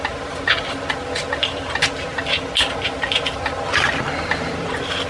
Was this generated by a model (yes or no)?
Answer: no